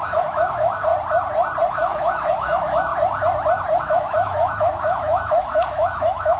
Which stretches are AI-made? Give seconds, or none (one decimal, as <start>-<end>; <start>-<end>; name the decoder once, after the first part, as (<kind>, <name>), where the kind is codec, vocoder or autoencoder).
0.0-0.9 (autoencoder, DAC-VAE); 1.7-2.9; 3.8-6.4